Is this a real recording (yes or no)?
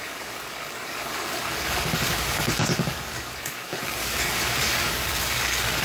no